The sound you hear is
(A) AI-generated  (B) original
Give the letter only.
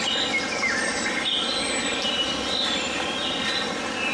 B